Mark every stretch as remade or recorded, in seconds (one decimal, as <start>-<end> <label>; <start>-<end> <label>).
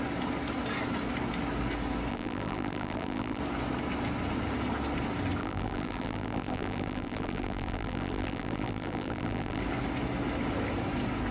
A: 0.0-2.1 recorded; 2.1-3.4 remade; 3.4-5.4 recorded; 5.4-9.6 remade; 9.6-11.3 recorded